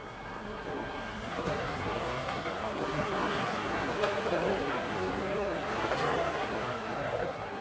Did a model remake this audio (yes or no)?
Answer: yes